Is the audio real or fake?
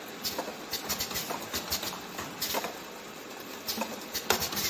real